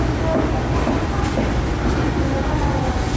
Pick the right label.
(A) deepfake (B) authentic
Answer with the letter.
B